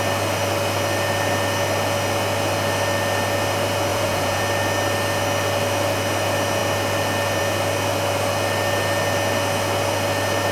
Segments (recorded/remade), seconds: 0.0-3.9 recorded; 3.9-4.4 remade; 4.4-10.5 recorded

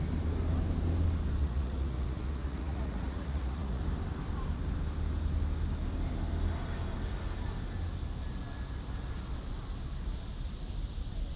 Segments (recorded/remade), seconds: 0.0-1.4 recorded; 1.4-3.8 remade; 3.8-11.4 recorded

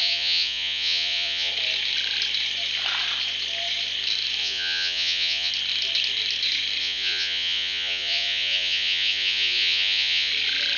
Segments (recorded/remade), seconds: 0.0-1.5 remade; 1.5-4.4 recorded; 4.4-5.5 remade; 5.5-6.8 recorded; 6.8-10.3 remade; 10.3-10.8 recorded

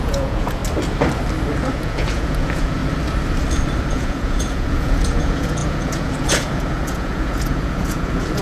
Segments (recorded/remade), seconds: 0.0-0.6 remade; 0.6-1.7 recorded; 1.7-2.8 remade; 2.8-3.9 recorded; 3.9-8.4 remade

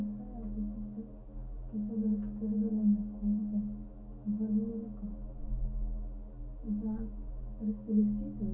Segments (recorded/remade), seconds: 0.0-8.5 recorded

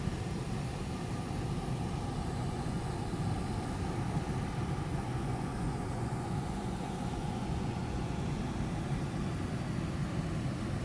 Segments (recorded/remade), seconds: 0.0-2.3 recorded; 2.3-2.9 remade; 2.9-4.9 recorded; 4.9-8.4 remade; 8.4-10.8 recorded

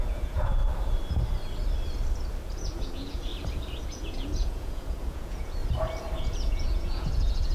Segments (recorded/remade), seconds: 0.0-0.6 remade; 0.6-2.4 recorded; 2.4-3.3 remade; 3.3-3.8 recorded; 3.8-5.6 remade; 5.6-6.2 recorded; 6.2-7.5 remade